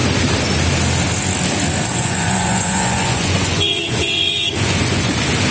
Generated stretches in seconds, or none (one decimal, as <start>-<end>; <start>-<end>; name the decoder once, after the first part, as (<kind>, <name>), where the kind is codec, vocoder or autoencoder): 1.9-5.1 (vocoder, Vocos)